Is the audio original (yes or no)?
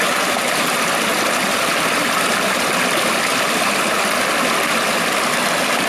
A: yes